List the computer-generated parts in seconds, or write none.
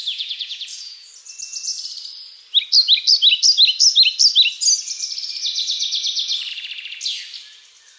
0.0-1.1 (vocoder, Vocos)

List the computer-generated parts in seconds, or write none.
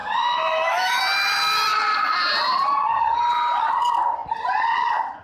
0.0-1.0 (autoencoder, DAC-VAE)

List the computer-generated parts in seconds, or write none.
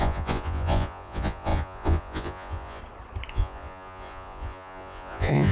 0.0-2.8 (vocoder, Vocos); 3.3-5.5